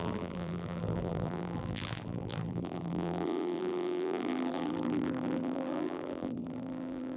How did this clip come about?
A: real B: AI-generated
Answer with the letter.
B